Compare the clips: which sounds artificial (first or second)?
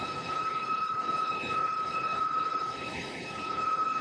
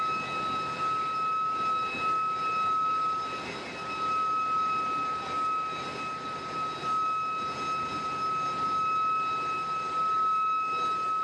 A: first